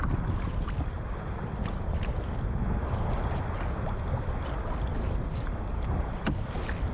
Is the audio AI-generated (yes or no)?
no